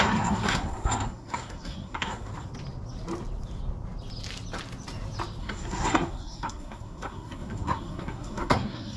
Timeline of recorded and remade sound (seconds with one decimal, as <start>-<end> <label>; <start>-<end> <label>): 0.0-2.3 remade; 2.3-5.4 recorded; 5.4-9.0 remade